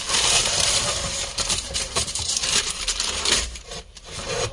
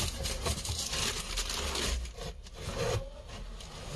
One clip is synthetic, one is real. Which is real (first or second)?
second